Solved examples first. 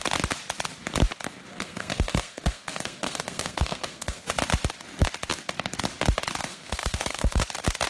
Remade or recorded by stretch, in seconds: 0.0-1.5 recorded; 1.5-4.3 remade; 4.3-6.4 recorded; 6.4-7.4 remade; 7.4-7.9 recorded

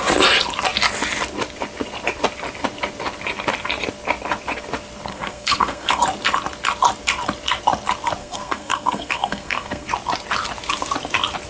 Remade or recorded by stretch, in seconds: 0.0-5.1 recorded; 5.1-6.0 remade; 6.0-8.2 recorded; 8.2-9.9 remade; 9.9-11.5 recorded